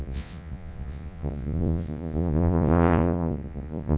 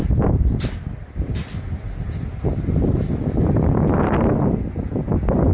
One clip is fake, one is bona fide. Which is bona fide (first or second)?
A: second